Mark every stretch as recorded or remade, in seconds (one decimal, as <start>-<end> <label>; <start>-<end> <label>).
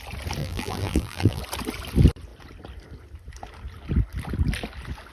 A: 0.0-0.4 recorded; 0.4-1.4 remade; 1.4-5.1 recorded